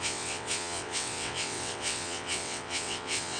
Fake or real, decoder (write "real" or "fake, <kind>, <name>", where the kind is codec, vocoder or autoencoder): fake, vocoder, WaveNeXt